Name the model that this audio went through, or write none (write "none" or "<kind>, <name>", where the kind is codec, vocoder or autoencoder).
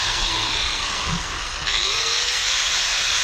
codec, SNAC